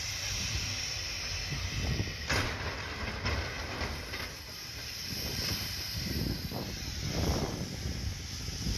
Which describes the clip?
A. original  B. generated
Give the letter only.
B